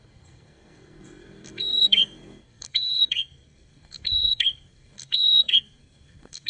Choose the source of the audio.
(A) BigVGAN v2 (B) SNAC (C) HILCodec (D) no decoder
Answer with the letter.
B